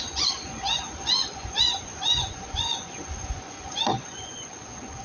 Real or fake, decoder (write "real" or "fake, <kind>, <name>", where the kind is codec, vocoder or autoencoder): fake, vocoder, Vocos